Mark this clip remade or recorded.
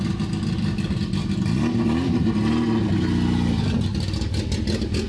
recorded